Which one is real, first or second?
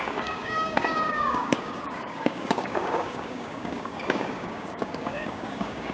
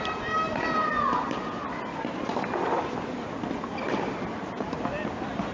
second